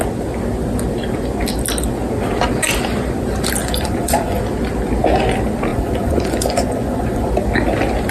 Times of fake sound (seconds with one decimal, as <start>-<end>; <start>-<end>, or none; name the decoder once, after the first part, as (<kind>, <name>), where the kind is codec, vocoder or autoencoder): 3.6-4.4 (vocoder, Vocos); 5.7-7.3